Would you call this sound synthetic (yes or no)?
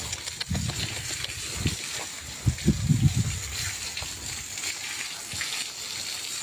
no